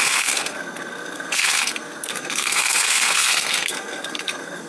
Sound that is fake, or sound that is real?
fake